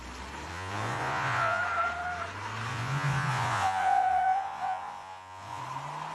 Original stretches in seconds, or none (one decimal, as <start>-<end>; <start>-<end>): 0.0-0.5; 1.6-2.7; 5.6-6.1